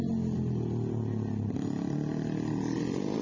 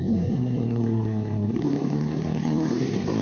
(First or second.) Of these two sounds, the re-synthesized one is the second